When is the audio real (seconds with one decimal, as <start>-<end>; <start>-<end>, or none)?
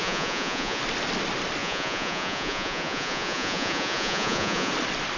0.8-1.6; 4.7-5.2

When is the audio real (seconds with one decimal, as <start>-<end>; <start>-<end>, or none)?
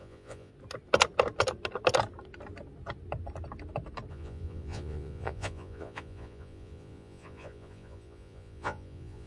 0.5-4.1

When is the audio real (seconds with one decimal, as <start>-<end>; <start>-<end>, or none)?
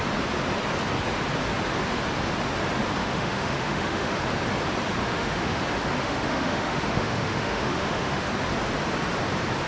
0.0-3.0; 4.1-5.0; 5.6-6.0; 8.3-9.7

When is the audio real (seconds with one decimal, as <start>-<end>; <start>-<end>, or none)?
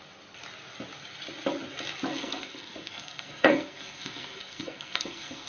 0.0-2.1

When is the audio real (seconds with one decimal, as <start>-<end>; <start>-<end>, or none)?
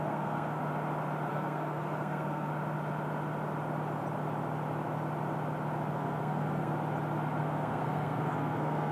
0.6-1.3; 2.5-5.9; 6.7-7.4